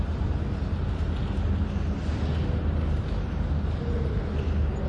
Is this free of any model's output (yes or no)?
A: yes